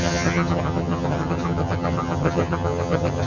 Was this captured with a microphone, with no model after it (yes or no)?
no